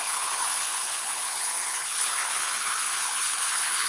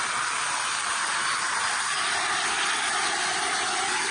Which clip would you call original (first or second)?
second